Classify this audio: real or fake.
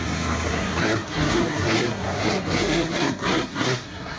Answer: fake